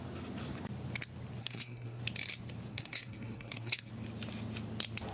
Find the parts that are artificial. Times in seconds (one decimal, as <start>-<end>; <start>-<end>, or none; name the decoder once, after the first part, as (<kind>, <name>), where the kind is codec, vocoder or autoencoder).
1.4-2.0 (codec, SNAC); 2.7-3.9